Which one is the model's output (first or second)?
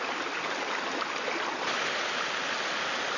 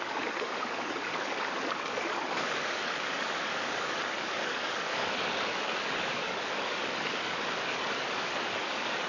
second